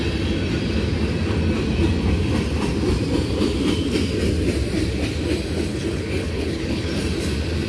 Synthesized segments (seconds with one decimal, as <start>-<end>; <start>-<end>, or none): 5.7-6.9